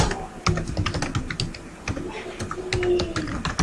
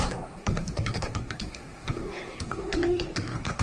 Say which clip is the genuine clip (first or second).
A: first